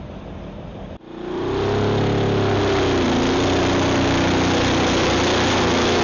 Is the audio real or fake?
real